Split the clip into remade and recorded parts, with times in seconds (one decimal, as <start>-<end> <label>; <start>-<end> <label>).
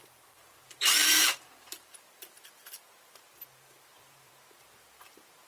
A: 0.0-5.5 remade